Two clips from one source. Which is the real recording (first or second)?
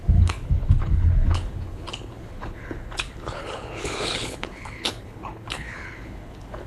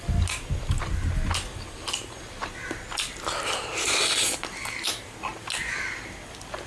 second